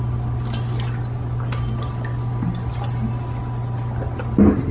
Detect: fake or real real